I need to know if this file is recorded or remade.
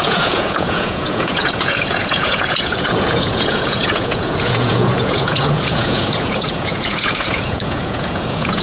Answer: remade